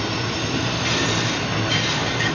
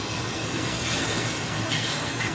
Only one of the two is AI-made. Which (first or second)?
second